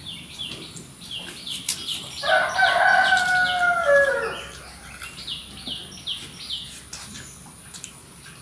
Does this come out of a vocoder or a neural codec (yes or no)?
no